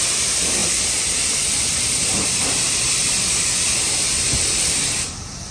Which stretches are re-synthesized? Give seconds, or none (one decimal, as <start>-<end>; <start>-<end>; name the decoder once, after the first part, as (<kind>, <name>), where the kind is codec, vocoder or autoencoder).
none